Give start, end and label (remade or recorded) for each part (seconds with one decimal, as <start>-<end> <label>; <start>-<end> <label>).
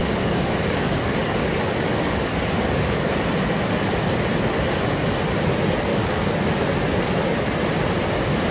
0.0-3.1 remade; 3.1-5.9 recorded; 5.9-6.5 remade; 6.5-8.5 recorded